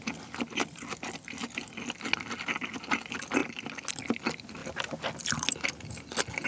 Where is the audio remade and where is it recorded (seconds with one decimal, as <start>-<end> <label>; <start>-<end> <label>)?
0.0-6.5 recorded

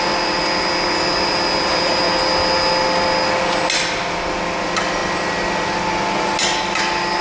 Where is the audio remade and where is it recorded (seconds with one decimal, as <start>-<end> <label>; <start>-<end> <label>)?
0.0-7.2 recorded

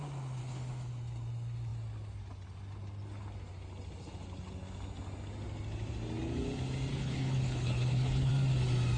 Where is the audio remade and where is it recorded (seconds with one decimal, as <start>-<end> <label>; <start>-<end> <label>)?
0.0-0.4 recorded; 0.4-0.9 remade; 0.9-6.9 recorded; 6.9-8.3 remade; 8.3-9.0 recorded

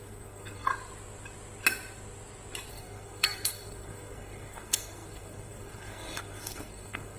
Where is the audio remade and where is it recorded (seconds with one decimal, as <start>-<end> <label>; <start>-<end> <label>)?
0.0-0.7 remade; 0.7-2.7 recorded; 2.7-7.2 remade

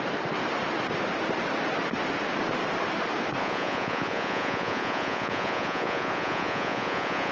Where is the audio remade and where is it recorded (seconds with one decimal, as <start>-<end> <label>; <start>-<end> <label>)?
0.0-3.4 recorded; 3.4-7.3 remade

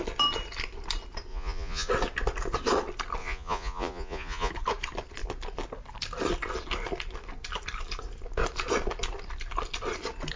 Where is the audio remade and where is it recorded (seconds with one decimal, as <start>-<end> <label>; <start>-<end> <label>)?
0.0-1.3 recorded; 1.3-1.9 remade; 1.9-3.2 recorded; 3.2-4.5 remade; 4.5-10.4 recorded

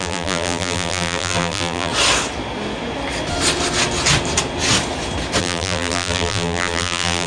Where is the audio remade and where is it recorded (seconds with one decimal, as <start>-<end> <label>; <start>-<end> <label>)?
0.0-1.9 remade; 1.9-5.4 recorded; 5.4-7.3 remade

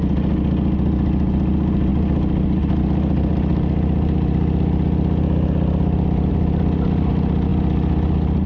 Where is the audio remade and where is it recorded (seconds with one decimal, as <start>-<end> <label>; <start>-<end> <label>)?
0.0-8.5 recorded